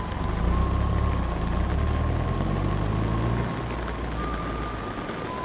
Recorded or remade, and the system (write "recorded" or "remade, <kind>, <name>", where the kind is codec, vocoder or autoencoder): recorded